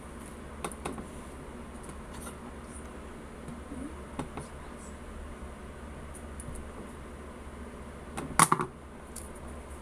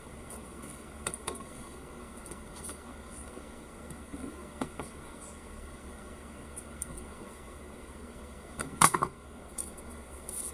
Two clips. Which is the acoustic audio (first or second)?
first